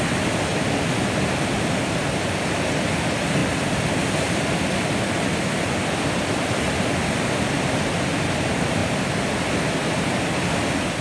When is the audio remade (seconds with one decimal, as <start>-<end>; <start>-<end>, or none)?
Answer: none